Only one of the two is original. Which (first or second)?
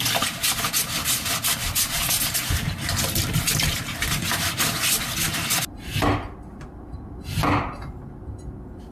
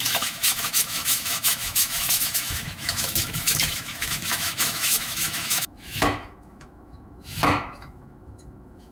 first